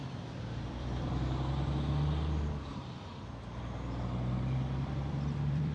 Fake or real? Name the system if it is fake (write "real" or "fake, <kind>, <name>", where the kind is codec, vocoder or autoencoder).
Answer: fake, vocoder, BigVGAN v2